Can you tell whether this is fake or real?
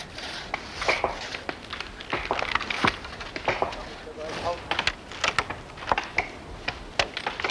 real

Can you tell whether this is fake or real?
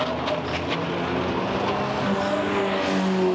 real